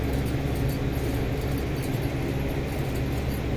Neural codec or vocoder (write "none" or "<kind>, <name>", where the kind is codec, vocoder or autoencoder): none